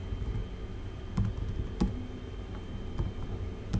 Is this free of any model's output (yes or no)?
yes